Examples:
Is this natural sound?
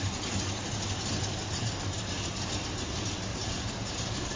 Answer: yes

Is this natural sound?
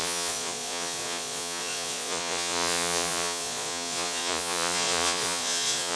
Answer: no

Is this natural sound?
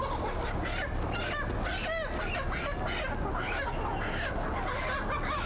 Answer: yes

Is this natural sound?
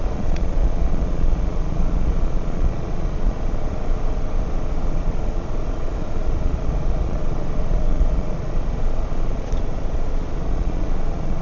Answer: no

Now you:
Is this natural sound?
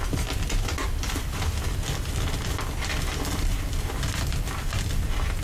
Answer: yes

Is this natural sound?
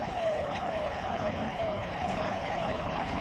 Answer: no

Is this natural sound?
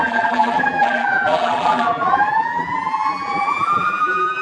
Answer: no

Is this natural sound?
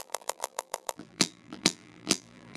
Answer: no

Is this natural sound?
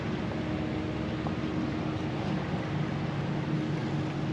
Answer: yes